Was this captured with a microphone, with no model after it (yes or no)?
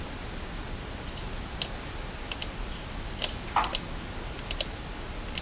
yes